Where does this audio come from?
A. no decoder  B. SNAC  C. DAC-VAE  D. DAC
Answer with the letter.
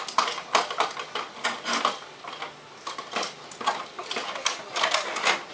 A